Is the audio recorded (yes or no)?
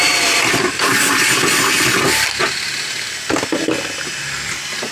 yes